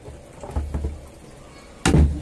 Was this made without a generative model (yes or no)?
yes